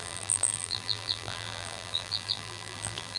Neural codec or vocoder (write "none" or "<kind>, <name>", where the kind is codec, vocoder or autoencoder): vocoder, BigVGAN v2